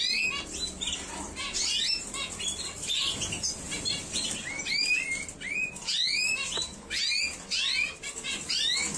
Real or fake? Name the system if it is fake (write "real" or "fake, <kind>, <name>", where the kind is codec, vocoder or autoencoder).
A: real